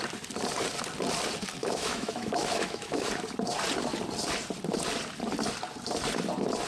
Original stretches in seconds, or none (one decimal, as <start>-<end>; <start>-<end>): 0.0-1.6; 3.1-6.7